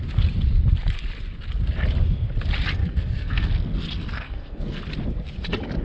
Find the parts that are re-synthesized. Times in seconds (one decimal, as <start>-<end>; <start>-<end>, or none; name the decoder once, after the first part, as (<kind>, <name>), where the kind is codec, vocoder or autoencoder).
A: 2.8-3.5 (codec, SNAC); 4.0-4.8